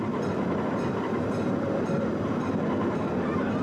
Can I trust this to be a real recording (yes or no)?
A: yes